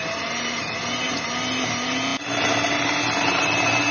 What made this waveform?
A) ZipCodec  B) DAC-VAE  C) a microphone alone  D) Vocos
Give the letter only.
C